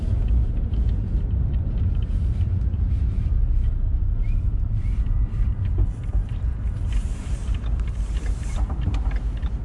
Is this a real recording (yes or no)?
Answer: no